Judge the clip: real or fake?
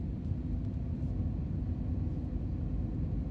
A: real